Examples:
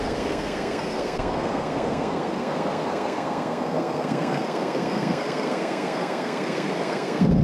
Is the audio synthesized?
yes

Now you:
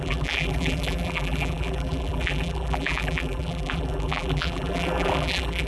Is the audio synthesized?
yes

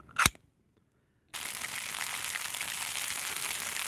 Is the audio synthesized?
no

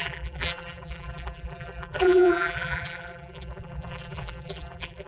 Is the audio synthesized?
yes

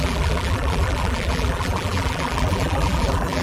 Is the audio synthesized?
yes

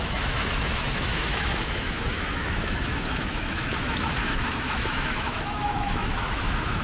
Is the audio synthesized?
yes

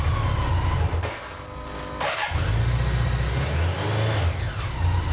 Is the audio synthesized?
no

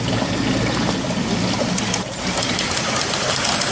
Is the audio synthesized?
no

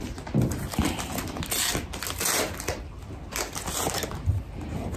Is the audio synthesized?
no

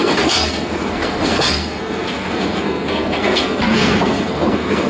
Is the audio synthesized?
yes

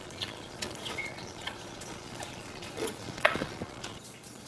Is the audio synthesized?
yes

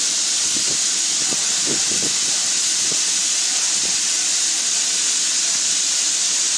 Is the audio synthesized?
no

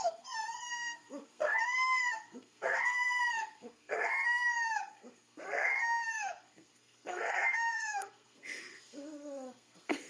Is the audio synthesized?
yes